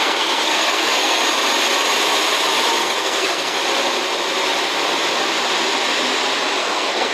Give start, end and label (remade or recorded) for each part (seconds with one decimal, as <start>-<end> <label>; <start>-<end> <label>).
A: 0.0-1.2 remade; 1.2-2.8 recorded; 2.8-3.6 remade; 3.6-6.6 recorded; 6.6-7.1 remade